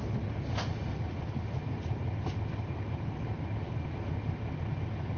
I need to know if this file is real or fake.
real